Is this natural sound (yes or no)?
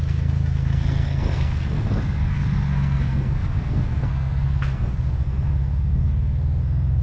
no